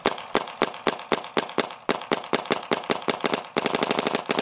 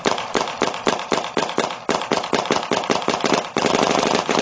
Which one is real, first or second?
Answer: first